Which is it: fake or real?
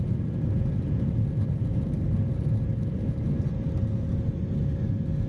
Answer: real